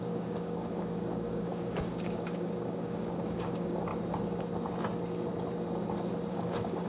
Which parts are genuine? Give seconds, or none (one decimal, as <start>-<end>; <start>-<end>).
3.9-6.3